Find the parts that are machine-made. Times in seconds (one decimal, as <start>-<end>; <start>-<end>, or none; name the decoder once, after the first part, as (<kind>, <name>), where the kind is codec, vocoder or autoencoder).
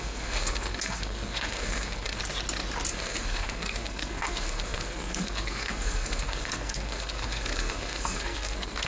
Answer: 0.0-2.2 (codec, SNAC); 2.9-8.9